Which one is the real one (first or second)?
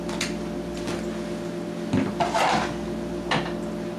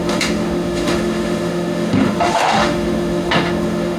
first